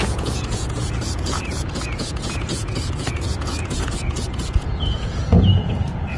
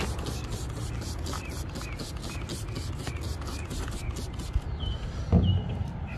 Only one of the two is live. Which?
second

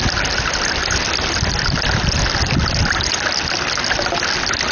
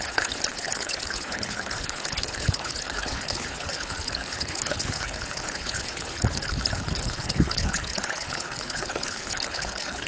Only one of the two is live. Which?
first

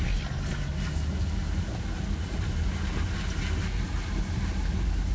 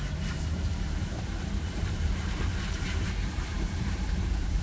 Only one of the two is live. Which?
first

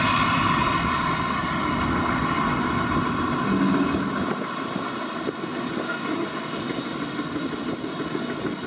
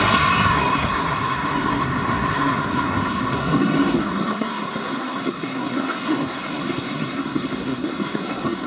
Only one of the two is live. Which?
first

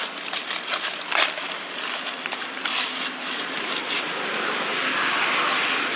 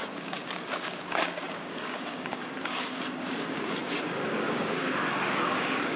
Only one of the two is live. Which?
first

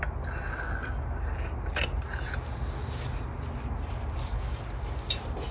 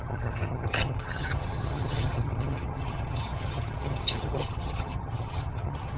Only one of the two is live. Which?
first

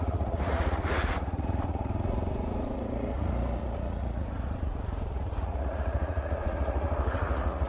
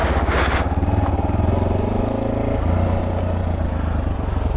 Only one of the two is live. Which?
second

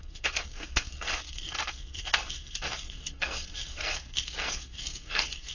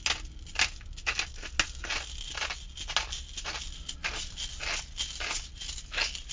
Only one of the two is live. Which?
second